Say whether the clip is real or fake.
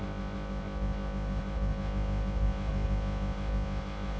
fake